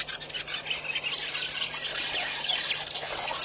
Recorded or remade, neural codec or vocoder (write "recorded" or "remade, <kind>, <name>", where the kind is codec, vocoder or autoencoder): recorded